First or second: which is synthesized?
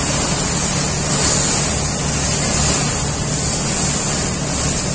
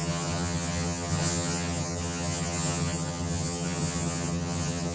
second